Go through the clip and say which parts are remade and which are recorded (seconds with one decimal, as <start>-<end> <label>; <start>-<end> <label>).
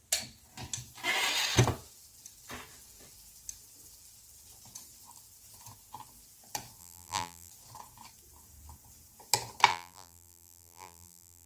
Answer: 0.0-6.8 recorded; 6.8-7.5 remade; 7.5-9.7 recorded; 9.7-11.5 remade